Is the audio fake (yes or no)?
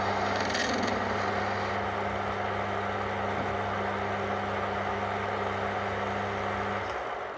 no